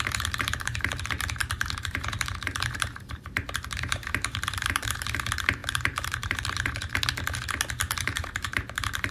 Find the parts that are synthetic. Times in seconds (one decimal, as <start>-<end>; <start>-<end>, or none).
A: 0.0-7.1; 8.0-9.1